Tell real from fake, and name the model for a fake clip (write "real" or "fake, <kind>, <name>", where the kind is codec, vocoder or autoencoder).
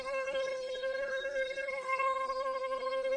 fake, codec, SNAC